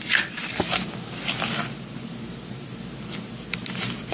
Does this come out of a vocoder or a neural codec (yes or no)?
no